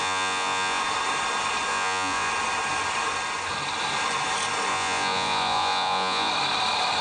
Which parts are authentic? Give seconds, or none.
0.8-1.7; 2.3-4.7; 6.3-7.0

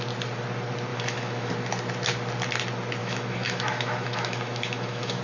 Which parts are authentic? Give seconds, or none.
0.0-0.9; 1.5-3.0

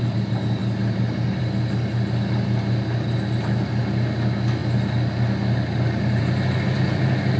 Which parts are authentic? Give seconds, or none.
0.0-7.4